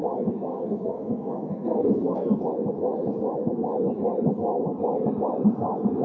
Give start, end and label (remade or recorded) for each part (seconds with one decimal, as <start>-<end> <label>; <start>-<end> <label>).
0.0-0.5 recorded; 0.5-2.4 remade; 2.4-6.0 recorded